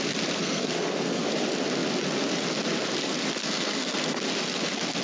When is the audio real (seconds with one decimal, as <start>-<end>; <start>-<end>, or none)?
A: 0.0-0.4; 1.2-3.4; 4.2-5.0